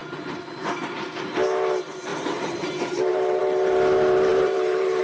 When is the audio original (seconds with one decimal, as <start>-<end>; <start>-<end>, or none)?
0.0-2.1; 3.4-4.3